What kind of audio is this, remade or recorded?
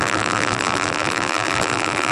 remade